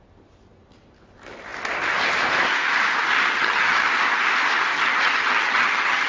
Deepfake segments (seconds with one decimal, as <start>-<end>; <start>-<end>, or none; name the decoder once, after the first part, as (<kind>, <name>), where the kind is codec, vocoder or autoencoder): 3.1-3.9 (vocoder, HiFi-GAN); 4.7-6.1